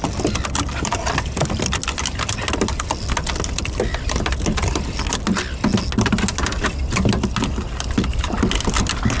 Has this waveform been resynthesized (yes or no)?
no